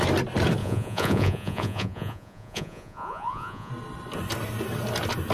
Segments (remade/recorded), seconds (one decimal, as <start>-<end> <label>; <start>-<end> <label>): 0.0-0.6 recorded; 0.6-3.7 remade; 3.7-5.3 recorded